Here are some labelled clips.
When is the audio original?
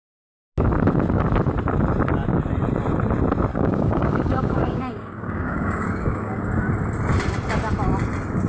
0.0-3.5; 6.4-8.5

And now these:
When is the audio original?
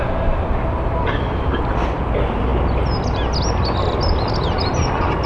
0.0-5.3